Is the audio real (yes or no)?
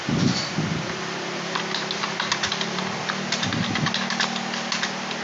yes